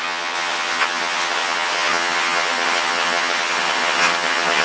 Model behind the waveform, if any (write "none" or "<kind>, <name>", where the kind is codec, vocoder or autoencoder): vocoder, HiFi-GAN